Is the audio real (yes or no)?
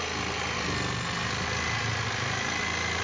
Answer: yes